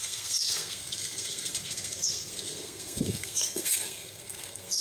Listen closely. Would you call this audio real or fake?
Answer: fake